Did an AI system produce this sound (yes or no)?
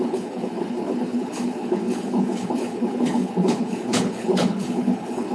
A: yes